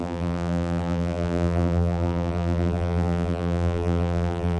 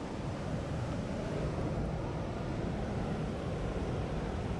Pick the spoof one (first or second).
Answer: first